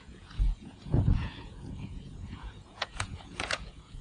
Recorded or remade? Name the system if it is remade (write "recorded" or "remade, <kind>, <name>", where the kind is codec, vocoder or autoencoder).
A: remade, vocoder, Vocos